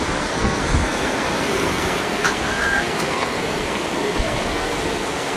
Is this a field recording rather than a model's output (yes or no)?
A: no